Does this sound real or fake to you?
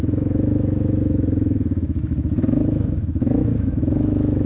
fake